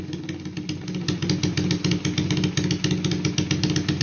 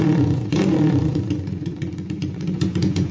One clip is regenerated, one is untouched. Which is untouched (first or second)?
first